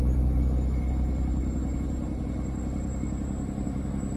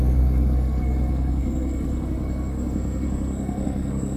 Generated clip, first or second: second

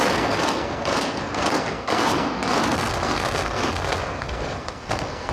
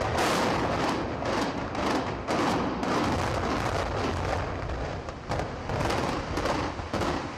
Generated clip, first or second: first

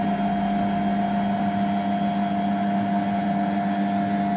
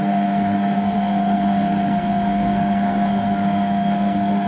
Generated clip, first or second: second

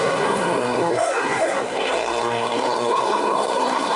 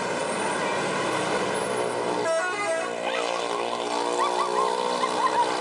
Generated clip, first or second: first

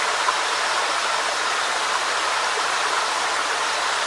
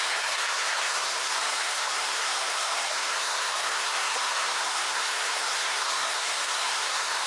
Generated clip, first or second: second